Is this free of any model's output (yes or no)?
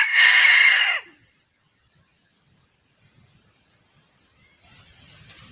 no